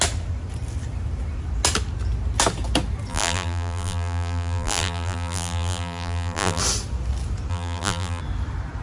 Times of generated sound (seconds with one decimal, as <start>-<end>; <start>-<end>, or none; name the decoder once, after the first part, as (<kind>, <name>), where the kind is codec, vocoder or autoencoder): 3.1-6.6 (vocoder, BigVGAN v2); 7.5-8.2

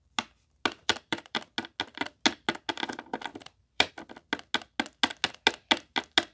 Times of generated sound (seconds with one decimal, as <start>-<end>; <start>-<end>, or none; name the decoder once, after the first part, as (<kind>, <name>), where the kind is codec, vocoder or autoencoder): 0.8-1.4 (vocoder, BigVGAN v2); 3.3-3.9

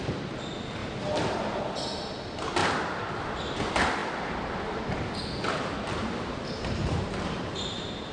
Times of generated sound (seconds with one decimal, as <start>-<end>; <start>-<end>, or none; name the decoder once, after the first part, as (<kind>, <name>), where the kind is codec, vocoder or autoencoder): 0.8-1.6 (vocoder, BigVGAN v2); 4.0-5.2; 6.0-8.1

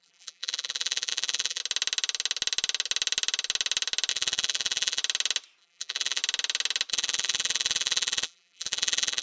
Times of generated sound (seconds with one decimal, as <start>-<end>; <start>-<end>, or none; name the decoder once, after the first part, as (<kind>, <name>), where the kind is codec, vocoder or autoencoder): 0.0-1.6 (vocoder, BigVGAN v2); 4.1-5.0; 5.6-6.2; 6.9-9.2

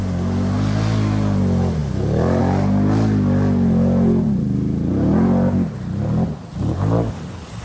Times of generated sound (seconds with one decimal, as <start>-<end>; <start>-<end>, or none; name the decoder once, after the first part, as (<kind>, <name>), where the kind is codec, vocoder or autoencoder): none

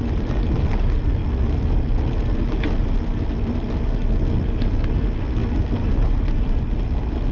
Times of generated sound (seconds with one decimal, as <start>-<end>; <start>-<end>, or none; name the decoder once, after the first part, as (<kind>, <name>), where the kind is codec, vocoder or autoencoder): none

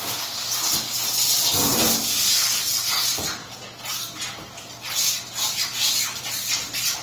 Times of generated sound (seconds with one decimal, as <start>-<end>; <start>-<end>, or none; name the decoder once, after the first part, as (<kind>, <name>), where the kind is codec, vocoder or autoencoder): none

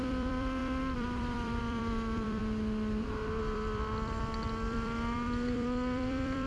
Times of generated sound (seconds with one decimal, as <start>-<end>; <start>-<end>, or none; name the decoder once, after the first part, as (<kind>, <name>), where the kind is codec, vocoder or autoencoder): 0.0-2.4 (vocoder, BigVGAN v2); 3.4-6.5